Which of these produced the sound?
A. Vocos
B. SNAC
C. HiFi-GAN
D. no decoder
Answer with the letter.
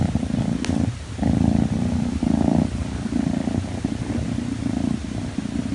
D